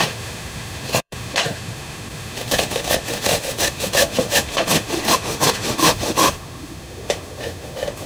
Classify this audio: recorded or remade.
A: remade